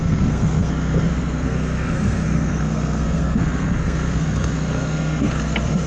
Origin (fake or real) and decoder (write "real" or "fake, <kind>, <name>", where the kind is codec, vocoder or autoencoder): fake, codec, SNAC